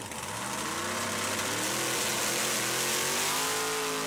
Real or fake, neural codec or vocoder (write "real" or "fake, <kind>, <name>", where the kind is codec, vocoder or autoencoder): real